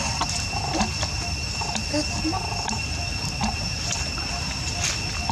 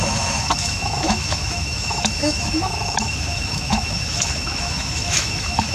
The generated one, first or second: second